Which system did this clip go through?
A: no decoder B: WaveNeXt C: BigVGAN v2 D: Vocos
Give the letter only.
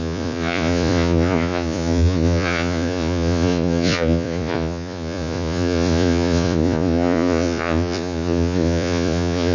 D